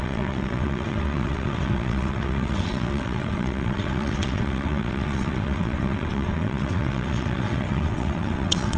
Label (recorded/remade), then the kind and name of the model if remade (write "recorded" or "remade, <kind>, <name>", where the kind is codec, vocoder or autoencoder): remade, vocoder, WaveNeXt